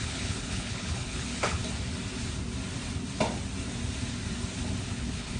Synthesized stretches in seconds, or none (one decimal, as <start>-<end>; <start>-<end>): 0.0-1.6; 4.8-5.4